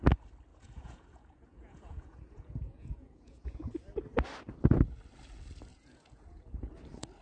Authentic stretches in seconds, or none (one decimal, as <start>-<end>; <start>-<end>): 0.0-0.5; 3.7-5.7; 6.7-7.2